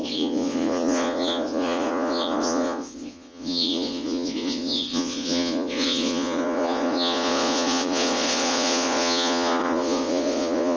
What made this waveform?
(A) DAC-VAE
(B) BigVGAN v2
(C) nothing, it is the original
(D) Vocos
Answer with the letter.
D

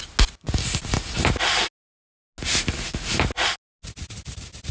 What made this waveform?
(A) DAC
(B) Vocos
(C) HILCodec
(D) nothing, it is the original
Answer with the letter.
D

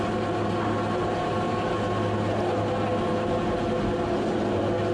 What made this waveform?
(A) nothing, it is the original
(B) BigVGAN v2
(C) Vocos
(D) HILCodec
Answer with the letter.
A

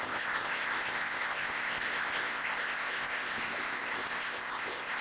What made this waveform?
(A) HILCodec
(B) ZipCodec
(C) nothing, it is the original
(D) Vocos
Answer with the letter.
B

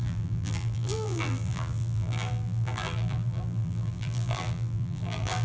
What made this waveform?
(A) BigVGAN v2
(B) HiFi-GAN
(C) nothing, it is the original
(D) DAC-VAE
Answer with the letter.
A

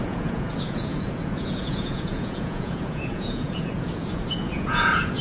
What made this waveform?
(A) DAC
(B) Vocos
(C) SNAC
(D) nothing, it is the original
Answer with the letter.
B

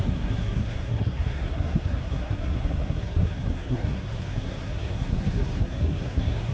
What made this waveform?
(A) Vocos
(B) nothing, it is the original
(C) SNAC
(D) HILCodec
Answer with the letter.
C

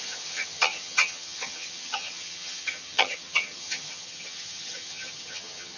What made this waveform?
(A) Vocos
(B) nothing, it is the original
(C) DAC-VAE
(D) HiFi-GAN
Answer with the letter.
D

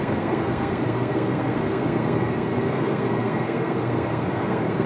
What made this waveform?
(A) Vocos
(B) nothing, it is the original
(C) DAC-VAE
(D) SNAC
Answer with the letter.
D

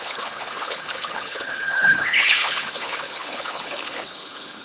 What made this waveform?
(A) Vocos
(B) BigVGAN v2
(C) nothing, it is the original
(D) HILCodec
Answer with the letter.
D